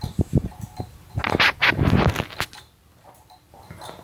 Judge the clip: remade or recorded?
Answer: recorded